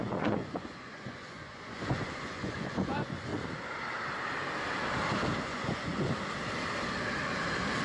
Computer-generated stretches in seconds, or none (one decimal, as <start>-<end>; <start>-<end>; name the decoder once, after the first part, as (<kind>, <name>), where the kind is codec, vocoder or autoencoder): 0.0-3.3 (vocoder, Vocos); 5.4-5.9